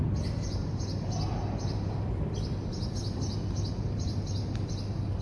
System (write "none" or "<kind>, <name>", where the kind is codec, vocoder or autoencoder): none